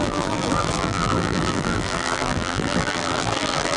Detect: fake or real fake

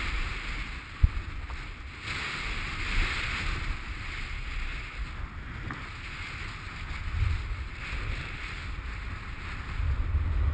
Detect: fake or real real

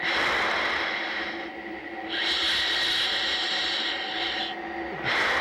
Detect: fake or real real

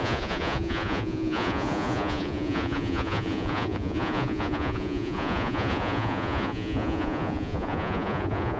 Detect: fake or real fake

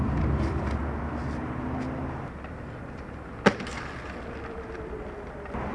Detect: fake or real real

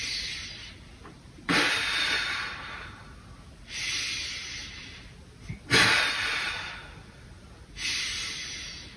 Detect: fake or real real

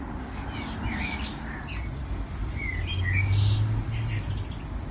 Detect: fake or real real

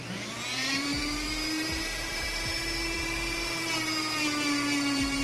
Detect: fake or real fake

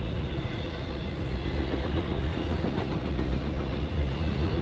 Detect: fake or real fake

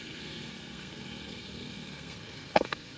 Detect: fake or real fake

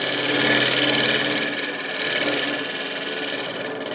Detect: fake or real real